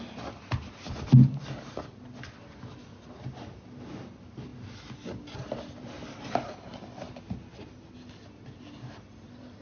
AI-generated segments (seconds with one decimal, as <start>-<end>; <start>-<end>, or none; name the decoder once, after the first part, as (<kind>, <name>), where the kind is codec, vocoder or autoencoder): none